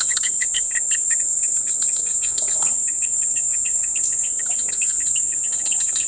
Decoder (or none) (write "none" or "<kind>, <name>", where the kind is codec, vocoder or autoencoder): codec, SNAC